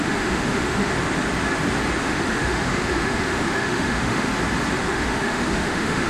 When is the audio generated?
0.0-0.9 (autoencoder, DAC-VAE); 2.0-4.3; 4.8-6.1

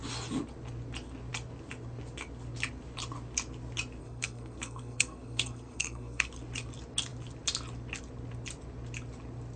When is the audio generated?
4.0-6.3 (codec, SNAC)

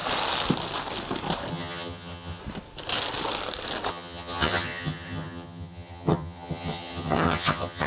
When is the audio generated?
1.5-2.4 (vocoder, HiFi-GAN); 3.9-7.9